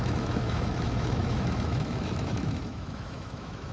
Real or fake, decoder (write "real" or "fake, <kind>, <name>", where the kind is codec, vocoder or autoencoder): fake, autoencoder, DAC-VAE